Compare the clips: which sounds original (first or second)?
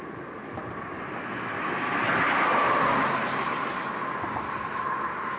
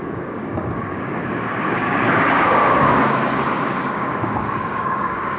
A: first